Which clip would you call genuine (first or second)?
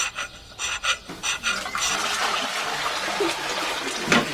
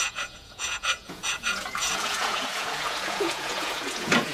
first